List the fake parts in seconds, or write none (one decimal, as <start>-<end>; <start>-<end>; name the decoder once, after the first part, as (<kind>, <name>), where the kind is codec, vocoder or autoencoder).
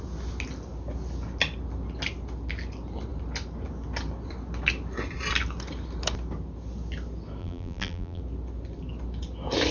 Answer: 7.4-8.2 (vocoder, BigVGAN v2)